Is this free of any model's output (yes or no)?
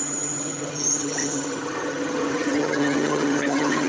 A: no